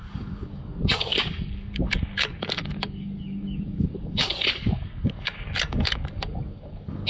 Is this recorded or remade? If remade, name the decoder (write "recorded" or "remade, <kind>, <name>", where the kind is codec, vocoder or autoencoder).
remade, codec, DAC